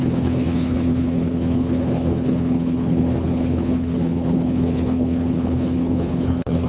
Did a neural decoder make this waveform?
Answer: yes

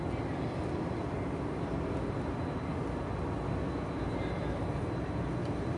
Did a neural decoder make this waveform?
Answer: no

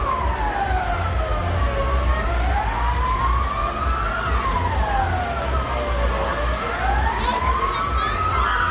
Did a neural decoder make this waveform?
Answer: no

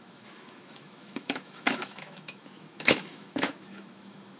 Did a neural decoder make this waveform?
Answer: yes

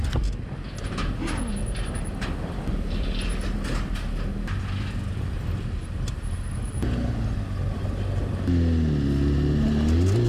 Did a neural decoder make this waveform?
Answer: no